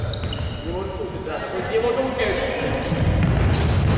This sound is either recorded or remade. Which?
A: recorded